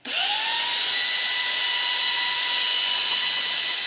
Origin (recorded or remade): remade